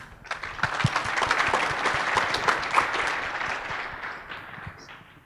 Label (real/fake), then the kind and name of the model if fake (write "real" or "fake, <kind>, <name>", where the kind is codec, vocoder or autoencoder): real